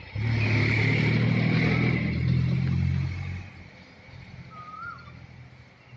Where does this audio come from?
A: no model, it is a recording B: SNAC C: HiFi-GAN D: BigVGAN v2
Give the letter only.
A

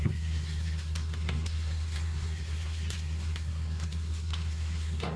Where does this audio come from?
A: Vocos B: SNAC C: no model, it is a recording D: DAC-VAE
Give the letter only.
B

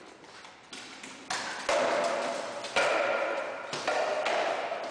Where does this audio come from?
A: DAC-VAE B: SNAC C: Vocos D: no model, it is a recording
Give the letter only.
D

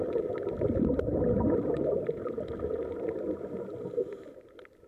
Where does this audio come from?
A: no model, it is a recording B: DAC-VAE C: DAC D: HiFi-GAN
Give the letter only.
A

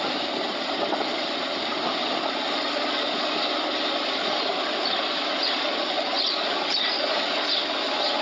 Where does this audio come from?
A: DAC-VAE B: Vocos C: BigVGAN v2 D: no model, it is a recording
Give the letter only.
D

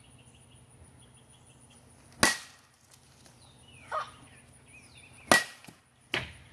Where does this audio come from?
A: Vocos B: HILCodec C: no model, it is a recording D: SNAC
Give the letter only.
C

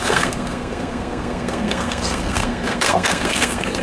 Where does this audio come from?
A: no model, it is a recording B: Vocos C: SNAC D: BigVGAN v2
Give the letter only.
C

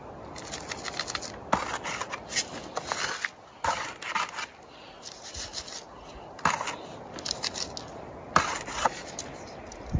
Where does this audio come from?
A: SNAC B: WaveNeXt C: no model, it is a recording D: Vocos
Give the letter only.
C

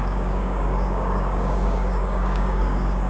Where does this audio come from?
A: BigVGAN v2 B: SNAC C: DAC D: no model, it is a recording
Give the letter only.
C